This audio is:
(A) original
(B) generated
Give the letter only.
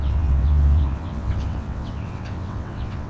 B